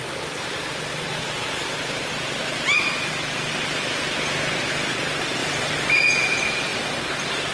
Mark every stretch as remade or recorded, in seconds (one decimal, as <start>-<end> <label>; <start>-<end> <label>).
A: 0.0-1.1 recorded; 1.1-4.9 remade; 4.9-5.4 recorded; 5.4-6.0 remade; 6.0-6.7 recorded; 6.7-7.5 remade